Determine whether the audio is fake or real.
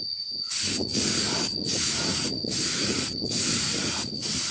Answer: fake